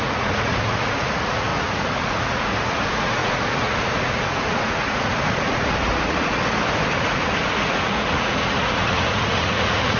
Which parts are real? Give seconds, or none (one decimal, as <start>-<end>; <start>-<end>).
6.4-6.9